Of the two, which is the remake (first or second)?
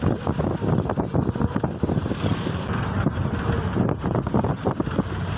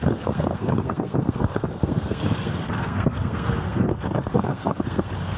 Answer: second